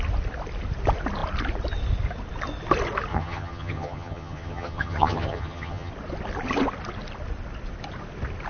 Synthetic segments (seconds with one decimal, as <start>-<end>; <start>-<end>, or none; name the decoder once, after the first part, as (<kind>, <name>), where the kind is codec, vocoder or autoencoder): 3.1-5.9 (vocoder, HiFi-GAN)